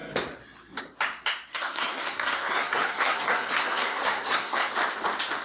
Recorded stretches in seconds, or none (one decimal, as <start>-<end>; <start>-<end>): 0.0-1.5; 4.7-5.4